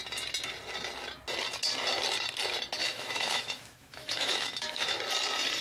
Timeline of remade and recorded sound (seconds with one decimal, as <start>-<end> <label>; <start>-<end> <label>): 0.0-2.8 recorded; 2.8-5.0 remade; 5.0-5.6 recorded